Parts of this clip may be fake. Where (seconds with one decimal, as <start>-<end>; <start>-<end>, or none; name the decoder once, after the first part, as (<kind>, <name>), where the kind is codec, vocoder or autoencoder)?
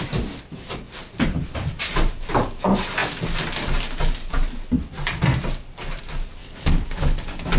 6.4-7.6 (codec, DAC)